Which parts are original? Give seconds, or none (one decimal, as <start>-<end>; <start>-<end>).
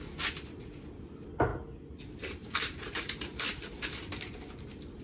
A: 0.0-2.4; 4.1-5.0